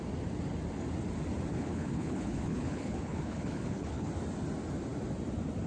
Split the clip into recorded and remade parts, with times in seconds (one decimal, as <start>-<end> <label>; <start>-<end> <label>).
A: 0.0-1.5 recorded; 1.5-4.1 remade; 4.1-5.7 recorded